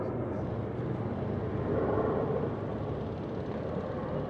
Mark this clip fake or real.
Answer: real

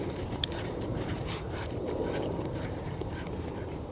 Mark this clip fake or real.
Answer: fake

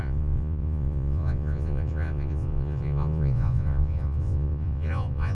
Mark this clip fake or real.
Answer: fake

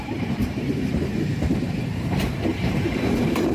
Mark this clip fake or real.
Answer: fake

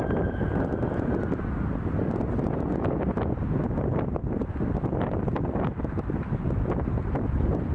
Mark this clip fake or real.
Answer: real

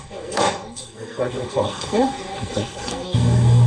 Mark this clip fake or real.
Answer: fake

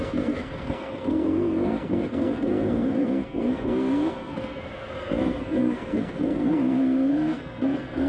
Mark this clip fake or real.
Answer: fake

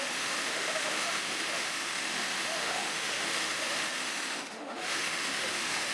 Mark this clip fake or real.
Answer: fake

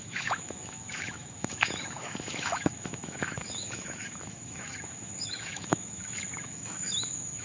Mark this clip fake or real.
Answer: fake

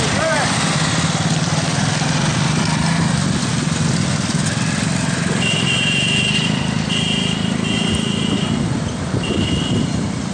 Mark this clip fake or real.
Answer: real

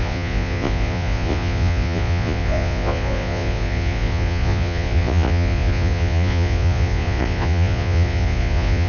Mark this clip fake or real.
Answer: fake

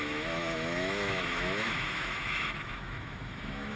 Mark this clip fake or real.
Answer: fake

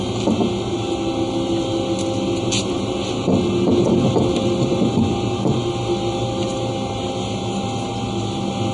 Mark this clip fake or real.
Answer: real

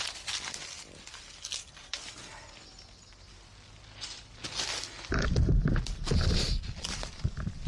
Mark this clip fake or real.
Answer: real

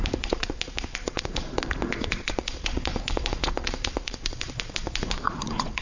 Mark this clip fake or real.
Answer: fake